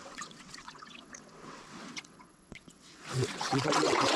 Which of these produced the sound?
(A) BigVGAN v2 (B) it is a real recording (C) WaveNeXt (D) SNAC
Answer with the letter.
C